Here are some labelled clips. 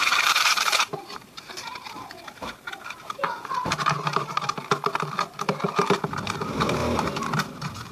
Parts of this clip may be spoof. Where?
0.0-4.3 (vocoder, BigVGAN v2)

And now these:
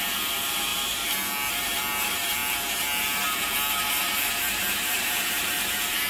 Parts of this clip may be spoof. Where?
0.0-6.1 (vocoder, BigVGAN v2)

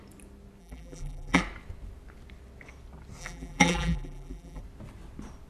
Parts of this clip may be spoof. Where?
0.6-1.4 (vocoder, BigVGAN v2); 3.2-4.6

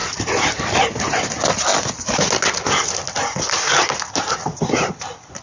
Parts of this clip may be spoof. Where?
0.0-0.6 (vocoder, BigVGAN v2)

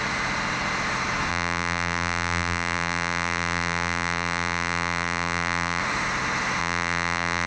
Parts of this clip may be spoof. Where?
1.3-5.8 (vocoder, BigVGAN v2); 6.6-7.5